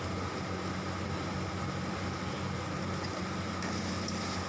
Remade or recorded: recorded